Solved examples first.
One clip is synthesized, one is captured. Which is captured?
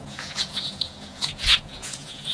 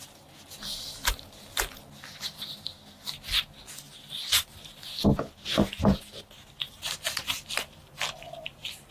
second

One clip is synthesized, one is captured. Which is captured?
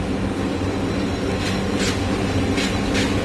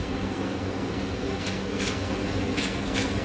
first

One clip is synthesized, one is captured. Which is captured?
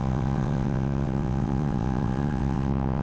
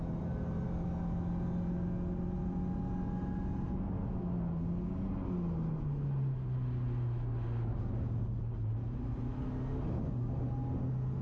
second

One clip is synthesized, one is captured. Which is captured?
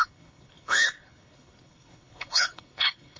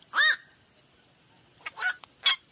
second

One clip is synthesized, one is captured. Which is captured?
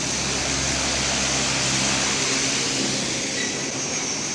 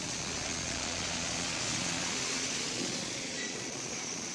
first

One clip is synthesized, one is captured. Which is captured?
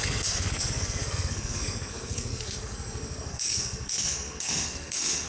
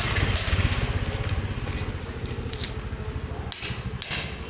second